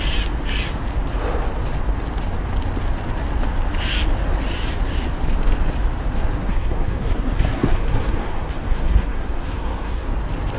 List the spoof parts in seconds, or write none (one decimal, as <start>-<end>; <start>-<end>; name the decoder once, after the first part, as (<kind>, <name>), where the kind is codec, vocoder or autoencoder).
6.4-10.1 (codec, SNAC)